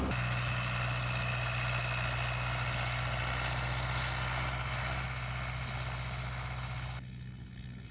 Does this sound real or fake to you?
real